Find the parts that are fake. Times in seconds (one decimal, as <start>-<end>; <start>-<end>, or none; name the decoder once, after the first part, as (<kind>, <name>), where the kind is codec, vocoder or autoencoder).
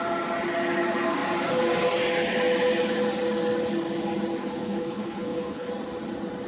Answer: 4.4-5.7 (codec, HILCodec)